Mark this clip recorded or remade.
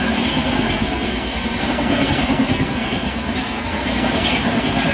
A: remade